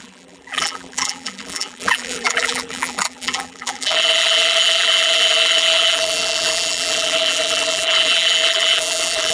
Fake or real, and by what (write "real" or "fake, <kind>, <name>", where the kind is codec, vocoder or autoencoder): fake, vocoder, BigVGAN v2